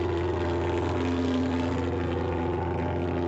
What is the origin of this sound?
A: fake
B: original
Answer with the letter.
B